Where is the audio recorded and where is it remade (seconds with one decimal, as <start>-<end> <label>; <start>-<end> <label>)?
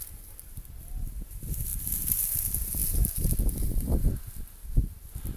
0.0-1.7 recorded; 1.7-2.3 remade; 2.3-5.4 recorded